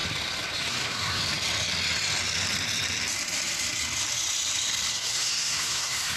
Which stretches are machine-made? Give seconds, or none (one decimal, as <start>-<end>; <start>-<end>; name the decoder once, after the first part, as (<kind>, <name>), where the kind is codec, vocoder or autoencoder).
0.7-1.2 (codec, SNAC); 4.9-6.2